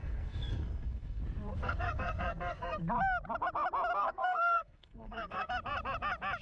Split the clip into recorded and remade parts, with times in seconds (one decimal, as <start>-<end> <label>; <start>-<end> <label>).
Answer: 0.0-1.2 remade; 1.2-1.6 recorded; 1.6-2.8 remade; 2.8-4.0 recorded; 4.0-5.5 remade; 5.5-6.4 recorded